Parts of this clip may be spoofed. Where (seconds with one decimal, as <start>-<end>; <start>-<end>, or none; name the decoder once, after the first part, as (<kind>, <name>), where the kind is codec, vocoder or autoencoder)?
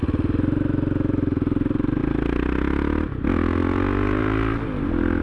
none